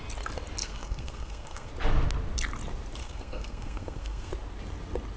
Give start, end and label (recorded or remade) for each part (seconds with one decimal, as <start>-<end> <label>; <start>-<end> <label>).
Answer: 0.0-0.6 recorded; 0.6-1.7 remade; 1.7-3.0 recorded; 3.0-4.3 remade; 4.3-5.2 recorded